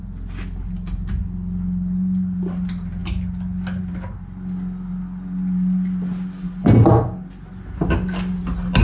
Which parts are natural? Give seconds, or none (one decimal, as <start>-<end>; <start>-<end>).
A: 0.0-8.8